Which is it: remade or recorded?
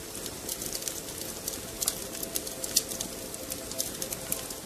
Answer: recorded